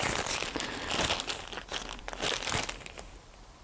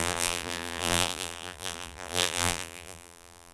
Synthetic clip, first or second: second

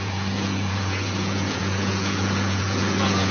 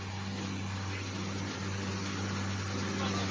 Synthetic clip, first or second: first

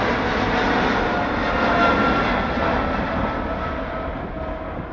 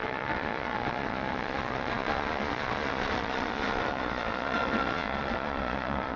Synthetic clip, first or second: second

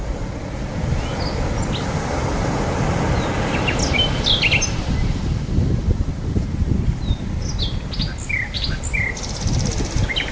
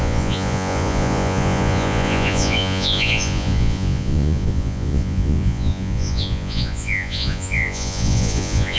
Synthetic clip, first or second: second